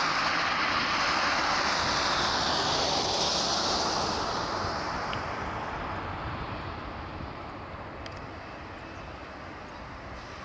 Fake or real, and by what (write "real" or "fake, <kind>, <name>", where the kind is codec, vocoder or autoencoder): real